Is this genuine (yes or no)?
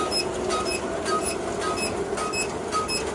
yes